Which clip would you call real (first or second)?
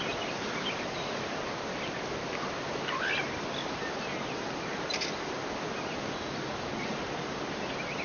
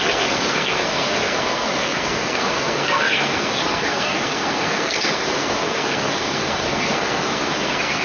first